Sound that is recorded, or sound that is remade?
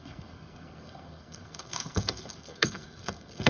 remade